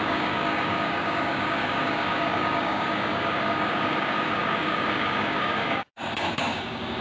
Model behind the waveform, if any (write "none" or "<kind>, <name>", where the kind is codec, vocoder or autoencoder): codec, DAC